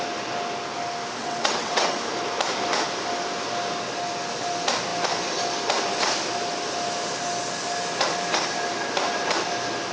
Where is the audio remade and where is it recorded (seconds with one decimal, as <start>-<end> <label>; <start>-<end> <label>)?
0.0-1.2 recorded; 1.2-2.0 remade; 2.0-9.9 recorded